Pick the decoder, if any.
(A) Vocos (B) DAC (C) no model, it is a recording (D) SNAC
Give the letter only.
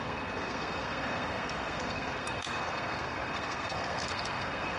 D